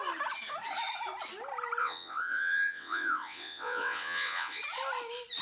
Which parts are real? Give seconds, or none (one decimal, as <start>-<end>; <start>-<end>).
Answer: 0.0-1.8; 4.6-5.4

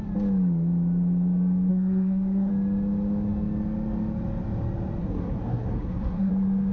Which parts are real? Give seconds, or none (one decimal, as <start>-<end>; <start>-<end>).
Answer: 0.0-1.7; 2.5-5.0; 6.3-6.7

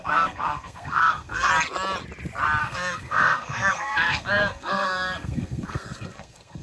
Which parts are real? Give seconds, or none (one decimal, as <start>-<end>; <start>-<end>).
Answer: 1.5-2.6

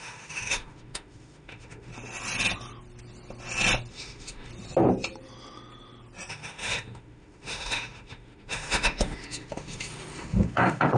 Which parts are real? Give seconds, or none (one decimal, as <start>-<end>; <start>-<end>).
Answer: 1.9-3.9; 4.5-6.3